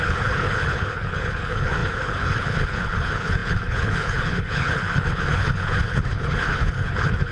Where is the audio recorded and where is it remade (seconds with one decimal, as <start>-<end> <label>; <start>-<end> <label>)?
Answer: 0.0-7.3 remade